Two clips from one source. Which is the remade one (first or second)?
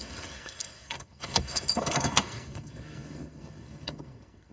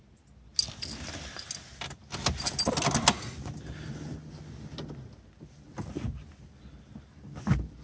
first